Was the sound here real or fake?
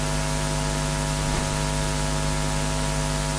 real